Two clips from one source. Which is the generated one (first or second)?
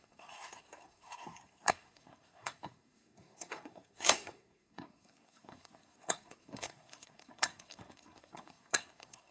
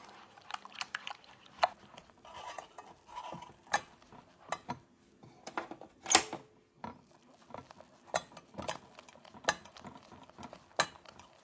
first